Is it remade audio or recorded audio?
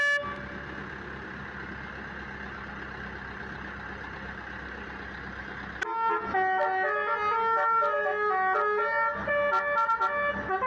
recorded